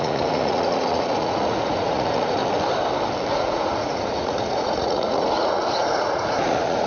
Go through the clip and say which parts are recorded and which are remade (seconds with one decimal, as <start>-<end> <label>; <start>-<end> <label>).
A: 0.0-2.4 remade; 2.4-3.3 recorded; 3.3-6.9 remade